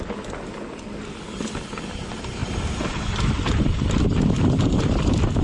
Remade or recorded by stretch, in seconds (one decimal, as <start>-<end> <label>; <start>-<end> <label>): 0.0-2.4 recorded; 2.4-4.0 remade; 4.0-5.4 recorded